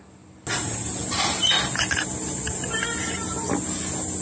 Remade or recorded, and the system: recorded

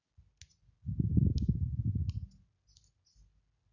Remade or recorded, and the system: recorded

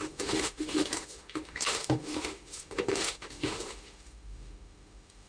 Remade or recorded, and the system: remade, autoencoder, DAC-VAE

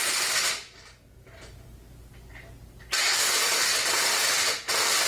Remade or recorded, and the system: recorded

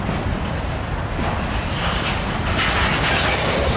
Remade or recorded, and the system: recorded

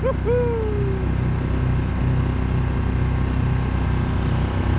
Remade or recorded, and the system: recorded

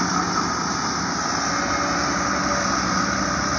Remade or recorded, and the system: recorded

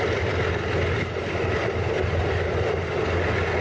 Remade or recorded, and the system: recorded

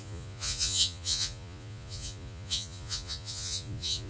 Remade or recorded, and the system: remade, vocoder, Vocos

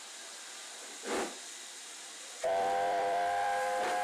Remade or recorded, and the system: remade, vocoder, BigVGAN v2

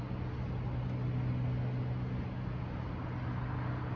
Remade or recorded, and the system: recorded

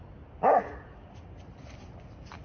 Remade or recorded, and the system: recorded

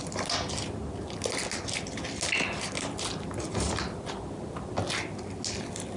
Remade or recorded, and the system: recorded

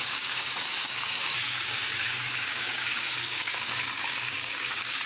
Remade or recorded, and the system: remade, codec, DAC